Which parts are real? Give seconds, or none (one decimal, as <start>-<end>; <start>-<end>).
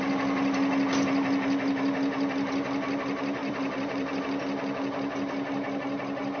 0.0-3.4; 4.2-6.4